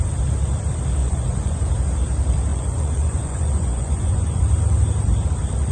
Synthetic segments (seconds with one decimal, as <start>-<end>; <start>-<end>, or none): 1.0-1.7; 2.5-4.4